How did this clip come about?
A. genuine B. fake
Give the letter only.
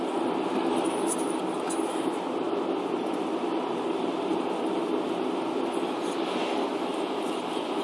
A